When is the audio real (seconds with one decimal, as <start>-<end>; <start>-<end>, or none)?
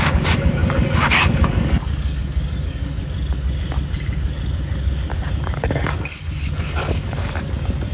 3.0-5.3